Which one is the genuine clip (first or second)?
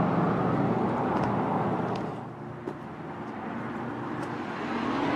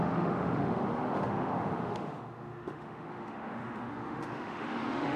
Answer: first